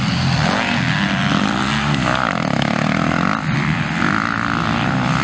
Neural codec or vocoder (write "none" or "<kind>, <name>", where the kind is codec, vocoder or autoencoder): none